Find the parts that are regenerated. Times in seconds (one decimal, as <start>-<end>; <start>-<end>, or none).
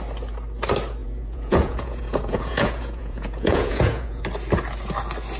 1.0-4.2